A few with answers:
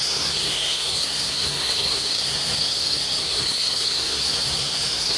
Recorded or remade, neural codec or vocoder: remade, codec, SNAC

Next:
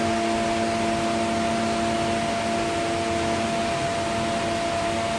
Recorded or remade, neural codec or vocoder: recorded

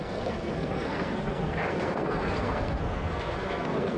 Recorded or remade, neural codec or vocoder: remade, codec, SNAC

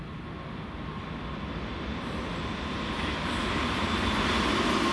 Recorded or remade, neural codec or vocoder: recorded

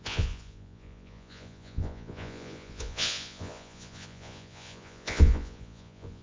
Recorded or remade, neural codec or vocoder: remade, vocoder, Vocos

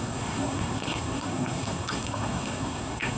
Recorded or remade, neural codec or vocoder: remade, codec, SNAC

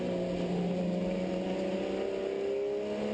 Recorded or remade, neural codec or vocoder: recorded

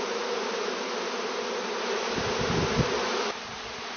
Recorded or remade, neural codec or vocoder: recorded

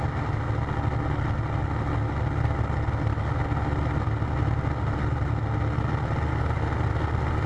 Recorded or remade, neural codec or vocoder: recorded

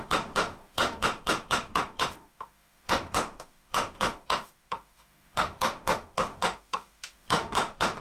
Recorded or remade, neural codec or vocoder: remade, autoencoder, DAC-VAE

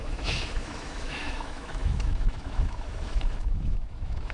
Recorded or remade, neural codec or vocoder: remade, autoencoder, DAC-VAE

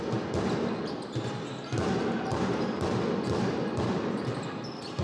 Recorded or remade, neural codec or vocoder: recorded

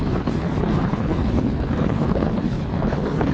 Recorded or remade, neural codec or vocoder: remade, codec, HILCodec